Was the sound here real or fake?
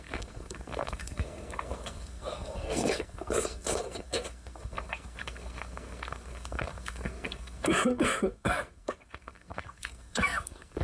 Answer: fake